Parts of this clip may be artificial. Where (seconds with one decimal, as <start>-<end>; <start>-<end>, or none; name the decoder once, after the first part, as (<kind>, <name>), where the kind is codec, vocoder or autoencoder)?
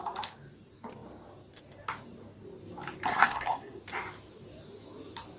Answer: 3.1-3.8 (codec, SNAC)